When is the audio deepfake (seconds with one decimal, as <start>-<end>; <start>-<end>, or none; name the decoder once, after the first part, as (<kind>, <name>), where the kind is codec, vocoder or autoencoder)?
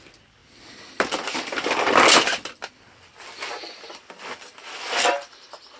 none